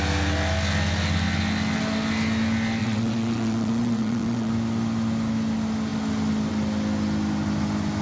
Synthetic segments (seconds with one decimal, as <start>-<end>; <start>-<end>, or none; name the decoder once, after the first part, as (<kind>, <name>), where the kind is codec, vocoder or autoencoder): 2.8-4.5 (vocoder, WaveNeXt)